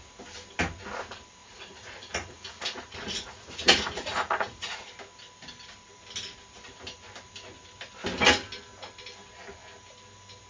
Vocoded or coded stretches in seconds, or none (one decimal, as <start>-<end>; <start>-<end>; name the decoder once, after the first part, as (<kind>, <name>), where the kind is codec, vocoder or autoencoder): 1.4-4.9 (vocoder, Vocos)